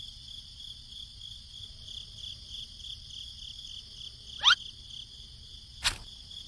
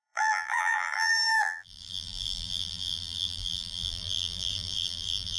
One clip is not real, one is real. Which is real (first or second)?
first